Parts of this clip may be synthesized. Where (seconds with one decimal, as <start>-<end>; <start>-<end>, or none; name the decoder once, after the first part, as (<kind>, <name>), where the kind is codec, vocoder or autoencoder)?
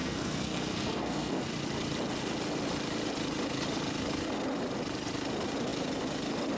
0.0-1.4 (codec, SNAC)